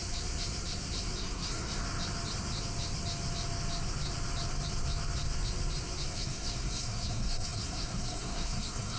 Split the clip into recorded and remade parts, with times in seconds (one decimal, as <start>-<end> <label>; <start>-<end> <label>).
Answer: 0.0-1.2 recorded; 1.2-1.8 remade; 1.8-6.1 recorded; 6.1-9.0 remade